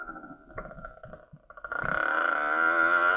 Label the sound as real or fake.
real